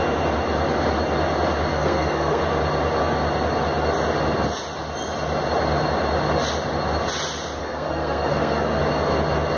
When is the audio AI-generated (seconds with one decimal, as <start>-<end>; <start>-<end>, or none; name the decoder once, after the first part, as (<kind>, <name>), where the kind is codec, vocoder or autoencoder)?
1.7-2.4 (codec, SNAC); 7.6-8.8

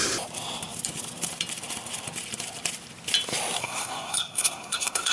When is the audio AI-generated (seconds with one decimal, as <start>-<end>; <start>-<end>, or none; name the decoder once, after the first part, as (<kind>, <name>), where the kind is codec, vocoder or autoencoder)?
3.6-5.1 (codec, SNAC)

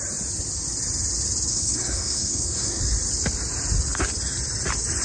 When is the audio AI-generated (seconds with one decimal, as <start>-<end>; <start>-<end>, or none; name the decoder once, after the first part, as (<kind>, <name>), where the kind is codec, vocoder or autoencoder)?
1.5-2.8 (codec, SNAC)

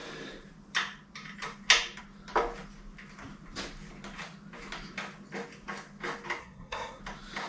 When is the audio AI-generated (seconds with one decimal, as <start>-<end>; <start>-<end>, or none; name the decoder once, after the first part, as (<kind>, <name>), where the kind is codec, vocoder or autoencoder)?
6.4-7.0 (codec, SNAC)

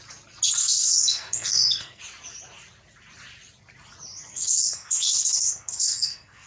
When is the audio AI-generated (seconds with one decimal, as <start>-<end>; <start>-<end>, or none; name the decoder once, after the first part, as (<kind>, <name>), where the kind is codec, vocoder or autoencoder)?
0.6-2.0 (codec, SNAC); 4.3-6.5